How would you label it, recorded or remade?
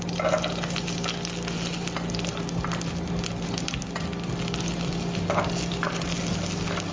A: recorded